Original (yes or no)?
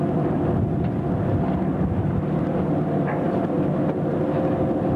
yes